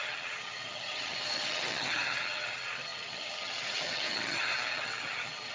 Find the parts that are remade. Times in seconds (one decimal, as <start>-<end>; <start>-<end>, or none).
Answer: 0.0-5.5